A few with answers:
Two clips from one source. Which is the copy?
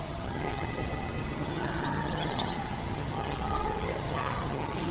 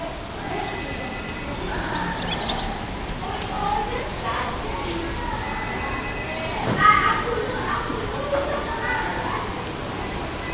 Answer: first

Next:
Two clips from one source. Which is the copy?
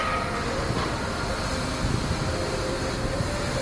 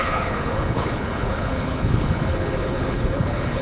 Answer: second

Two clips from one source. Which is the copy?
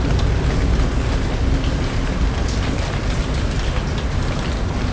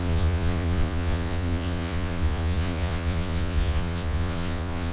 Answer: second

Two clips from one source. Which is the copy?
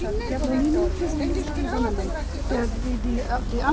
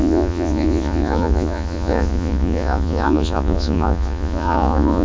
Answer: second